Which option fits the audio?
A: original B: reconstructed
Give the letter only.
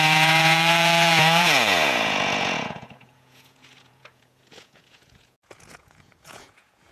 B